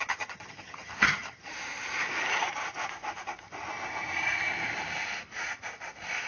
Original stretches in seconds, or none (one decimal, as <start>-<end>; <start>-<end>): 1.5-2.2; 2.6-6.3